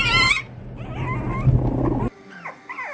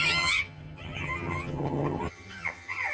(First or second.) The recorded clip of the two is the first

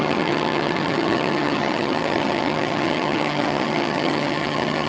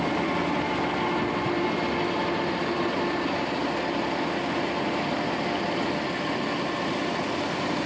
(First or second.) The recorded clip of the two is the second